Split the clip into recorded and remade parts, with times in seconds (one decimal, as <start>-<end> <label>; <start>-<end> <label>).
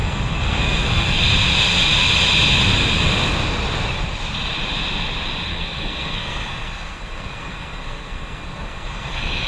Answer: 0.0-1.2 remade; 1.2-5.5 recorded; 5.5-9.5 remade